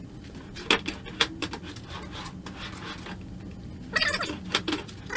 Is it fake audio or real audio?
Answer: real